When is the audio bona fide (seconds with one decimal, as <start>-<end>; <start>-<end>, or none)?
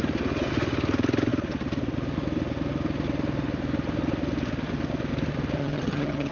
0.0-5.6